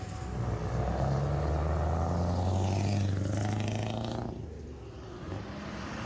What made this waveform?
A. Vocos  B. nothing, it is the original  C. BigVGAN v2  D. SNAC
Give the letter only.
B